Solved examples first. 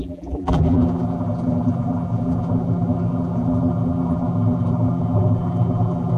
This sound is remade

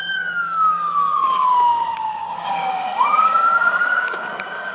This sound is remade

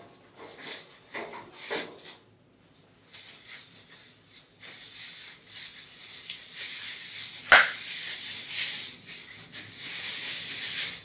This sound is recorded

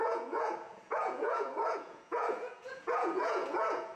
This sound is remade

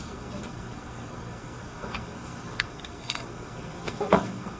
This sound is remade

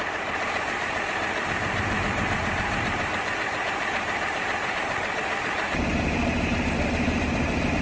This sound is remade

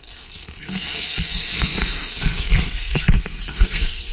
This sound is remade